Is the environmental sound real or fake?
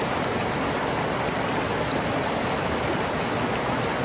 real